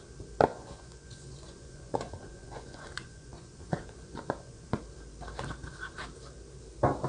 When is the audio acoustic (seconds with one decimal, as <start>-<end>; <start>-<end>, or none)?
0.0-0.5; 4.8-7.1